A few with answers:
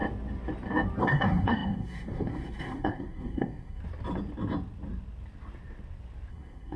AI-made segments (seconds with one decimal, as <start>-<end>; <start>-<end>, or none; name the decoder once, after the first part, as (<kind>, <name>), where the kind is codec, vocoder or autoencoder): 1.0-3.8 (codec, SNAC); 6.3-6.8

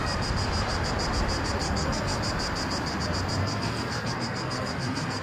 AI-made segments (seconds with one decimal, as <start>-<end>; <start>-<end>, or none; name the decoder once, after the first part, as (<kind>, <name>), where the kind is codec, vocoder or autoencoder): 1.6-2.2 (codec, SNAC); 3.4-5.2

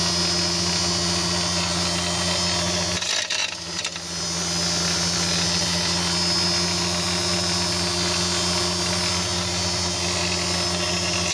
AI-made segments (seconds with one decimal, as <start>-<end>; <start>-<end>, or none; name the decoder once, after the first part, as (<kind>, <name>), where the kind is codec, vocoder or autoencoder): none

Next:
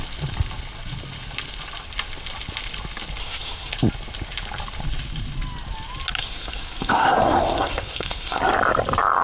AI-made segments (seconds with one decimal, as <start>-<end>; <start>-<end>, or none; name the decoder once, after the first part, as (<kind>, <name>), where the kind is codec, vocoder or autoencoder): 3.2-3.7 (codec, SNAC); 6.2-8.4

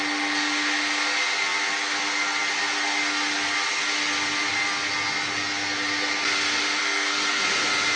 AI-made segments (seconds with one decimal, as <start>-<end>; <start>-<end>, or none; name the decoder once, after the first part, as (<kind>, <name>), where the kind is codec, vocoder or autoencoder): 6.8-7.4 (codec, SNAC)